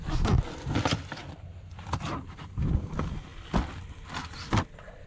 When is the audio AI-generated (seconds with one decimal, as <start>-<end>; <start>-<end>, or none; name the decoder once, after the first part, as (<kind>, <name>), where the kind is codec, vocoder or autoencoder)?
1.2-2.3 (vocoder, BigVGAN v2)